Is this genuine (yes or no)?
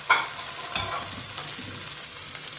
yes